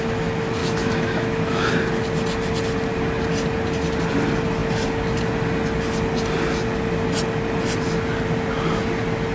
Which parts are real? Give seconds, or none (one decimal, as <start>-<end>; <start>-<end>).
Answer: 0.0-0.6; 1.7-9.3

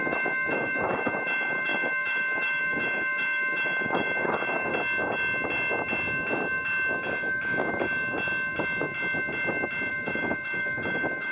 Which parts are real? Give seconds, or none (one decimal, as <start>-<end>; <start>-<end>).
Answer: 4.7-9.9

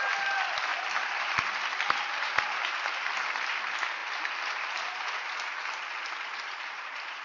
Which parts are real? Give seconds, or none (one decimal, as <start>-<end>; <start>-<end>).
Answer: 0.0-7.2

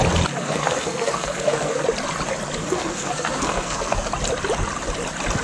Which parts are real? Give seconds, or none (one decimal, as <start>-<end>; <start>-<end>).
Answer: 0.0-0.4; 1.8-2.6; 4.1-5.4

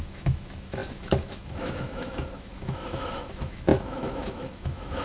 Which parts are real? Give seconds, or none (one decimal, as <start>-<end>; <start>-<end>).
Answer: none

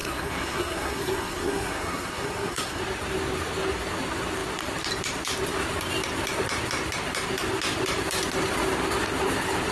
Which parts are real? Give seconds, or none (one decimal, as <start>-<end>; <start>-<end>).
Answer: 2.8-9.7

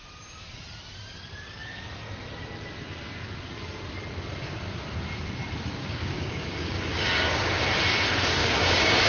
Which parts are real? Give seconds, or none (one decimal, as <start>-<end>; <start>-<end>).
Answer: 0.0-5.8; 7.6-8.4